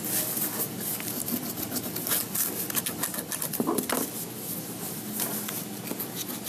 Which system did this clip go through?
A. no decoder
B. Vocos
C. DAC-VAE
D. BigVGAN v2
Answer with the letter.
A